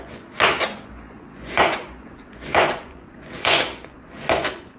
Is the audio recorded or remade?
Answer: remade